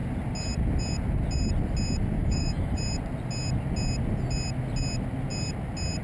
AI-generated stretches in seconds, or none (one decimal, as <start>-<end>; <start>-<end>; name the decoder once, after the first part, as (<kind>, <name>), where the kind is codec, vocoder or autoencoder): 2.2-2.8 (autoencoder, DAC-VAE)